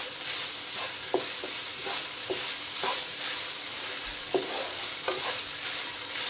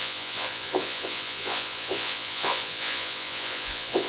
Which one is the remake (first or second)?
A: second